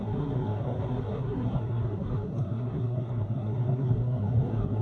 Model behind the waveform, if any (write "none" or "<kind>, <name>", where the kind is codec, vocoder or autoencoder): codec, SNAC